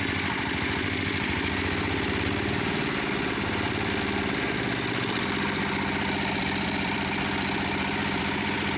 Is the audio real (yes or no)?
no